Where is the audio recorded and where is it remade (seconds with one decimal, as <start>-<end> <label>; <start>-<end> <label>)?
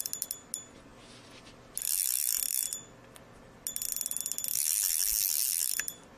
0.0-6.2 recorded